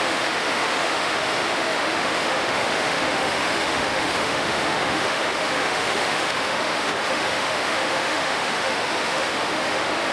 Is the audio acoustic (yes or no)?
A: no